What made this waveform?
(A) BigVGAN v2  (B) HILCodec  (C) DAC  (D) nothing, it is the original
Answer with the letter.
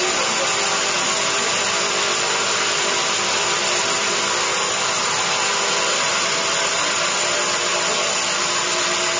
D